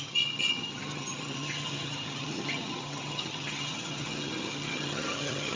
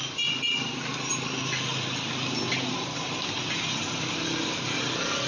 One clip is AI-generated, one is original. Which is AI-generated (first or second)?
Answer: first